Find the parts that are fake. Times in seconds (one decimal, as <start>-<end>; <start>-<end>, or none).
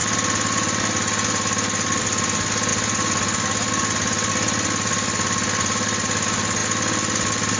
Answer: none